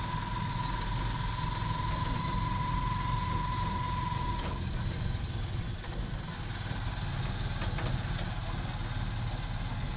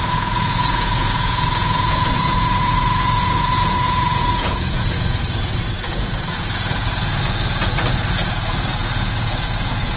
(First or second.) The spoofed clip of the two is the second